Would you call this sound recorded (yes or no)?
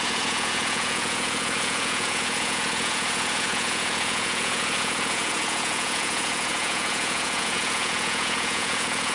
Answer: no